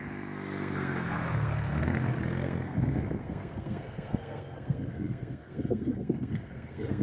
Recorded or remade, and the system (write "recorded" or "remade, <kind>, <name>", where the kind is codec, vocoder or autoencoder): remade, codec, SNAC